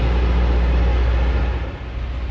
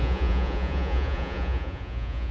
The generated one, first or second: second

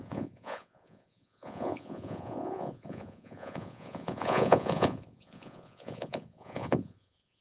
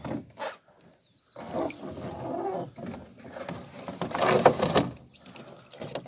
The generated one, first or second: first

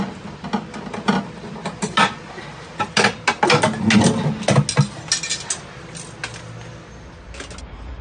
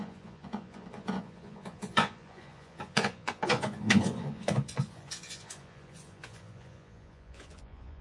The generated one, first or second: second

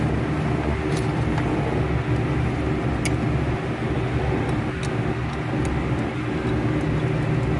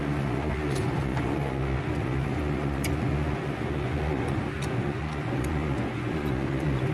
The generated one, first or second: second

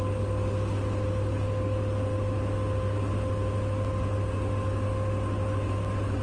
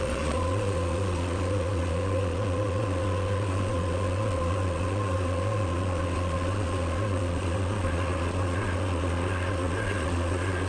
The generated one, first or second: second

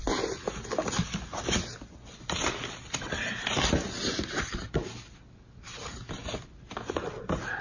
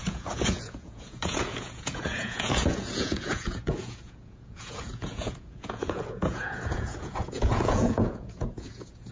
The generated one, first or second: second